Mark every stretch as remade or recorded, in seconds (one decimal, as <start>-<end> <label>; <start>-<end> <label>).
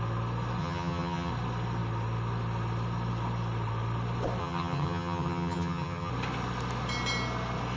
0.0-0.6 recorded; 0.6-1.3 remade; 1.3-4.4 recorded; 4.4-6.1 remade; 6.1-7.8 recorded